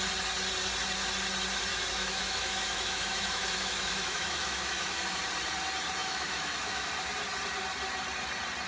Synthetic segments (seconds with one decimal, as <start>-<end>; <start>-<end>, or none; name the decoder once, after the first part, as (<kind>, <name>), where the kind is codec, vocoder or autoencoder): 1.7-5.2 (autoencoder, DAC-VAE); 6.0-6.9